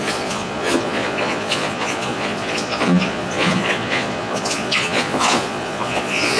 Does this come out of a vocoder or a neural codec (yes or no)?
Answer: yes